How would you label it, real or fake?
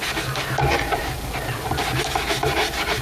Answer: real